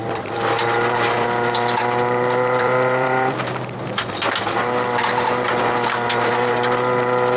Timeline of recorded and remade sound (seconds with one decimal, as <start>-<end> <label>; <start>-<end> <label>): 0.0-4.4 remade; 4.4-7.4 recorded